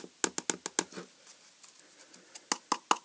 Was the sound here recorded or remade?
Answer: recorded